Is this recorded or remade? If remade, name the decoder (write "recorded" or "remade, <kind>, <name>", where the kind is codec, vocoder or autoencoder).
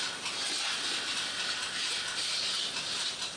recorded